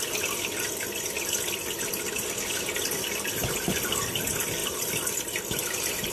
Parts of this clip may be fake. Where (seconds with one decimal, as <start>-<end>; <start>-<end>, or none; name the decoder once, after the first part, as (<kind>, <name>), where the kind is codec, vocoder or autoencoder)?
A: 4.6-5.4 (vocoder, BigVGAN v2)